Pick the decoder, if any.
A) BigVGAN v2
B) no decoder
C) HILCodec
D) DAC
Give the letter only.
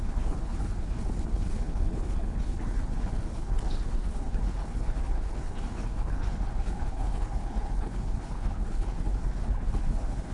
C